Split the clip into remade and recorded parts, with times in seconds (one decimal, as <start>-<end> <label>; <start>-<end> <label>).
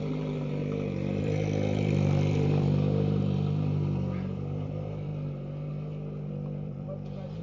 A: 0.0-0.6 remade; 0.6-1.2 recorded; 1.2-5.1 remade; 5.1-6.3 recorded; 6.3-7.4 remade